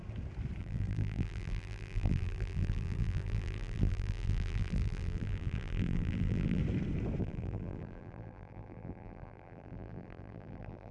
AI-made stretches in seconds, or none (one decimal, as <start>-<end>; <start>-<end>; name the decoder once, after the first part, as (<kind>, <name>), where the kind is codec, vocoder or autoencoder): 0.6-6.6 (vocoder, BigVGAN v2); 7.2-10.9